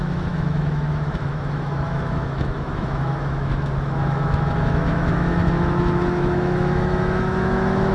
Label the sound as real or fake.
fake